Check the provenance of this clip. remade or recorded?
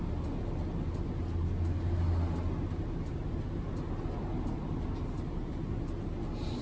recorded